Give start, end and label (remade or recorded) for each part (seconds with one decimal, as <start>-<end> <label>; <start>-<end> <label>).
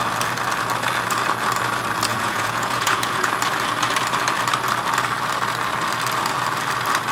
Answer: 0.0-2.1 recorded; 2.1-3.3 remade; 3.3-7.1 recorded